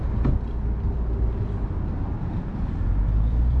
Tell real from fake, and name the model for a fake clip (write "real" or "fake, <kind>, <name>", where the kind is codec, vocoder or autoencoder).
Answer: real